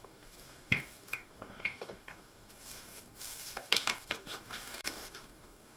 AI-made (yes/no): yes